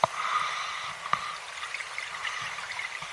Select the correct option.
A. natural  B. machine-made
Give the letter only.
A